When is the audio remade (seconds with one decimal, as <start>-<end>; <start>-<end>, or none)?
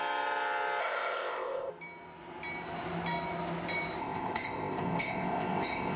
0.8-1.7; 4.0-6.0